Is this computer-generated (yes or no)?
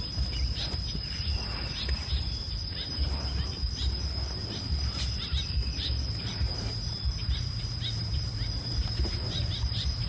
yes